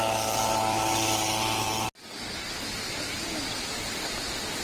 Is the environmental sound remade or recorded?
recorded